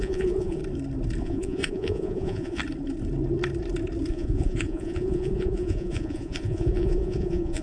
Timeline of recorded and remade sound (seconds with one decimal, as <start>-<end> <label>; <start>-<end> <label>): 0.0-0.6 remade; 0.6-1.2 recorded; 1.2-2.6 remade; 2.6-4.1 recorded; 4.1-7.6 remade